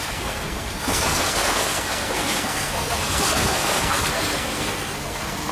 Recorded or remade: remade